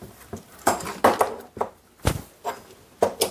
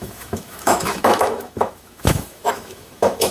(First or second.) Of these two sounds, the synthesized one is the second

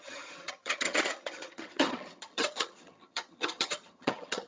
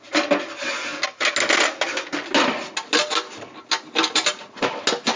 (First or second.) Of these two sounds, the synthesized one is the first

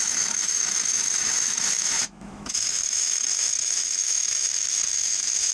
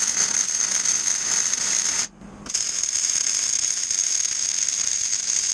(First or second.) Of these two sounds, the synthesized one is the first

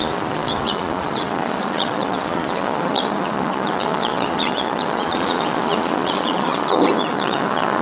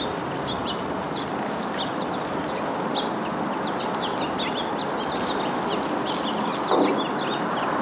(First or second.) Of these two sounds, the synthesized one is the first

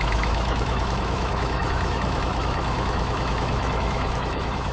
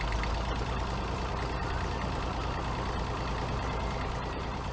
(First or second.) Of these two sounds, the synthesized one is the first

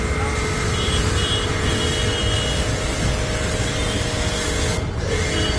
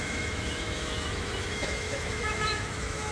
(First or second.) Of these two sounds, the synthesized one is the second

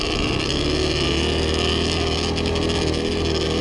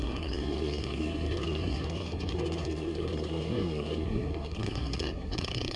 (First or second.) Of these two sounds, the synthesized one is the second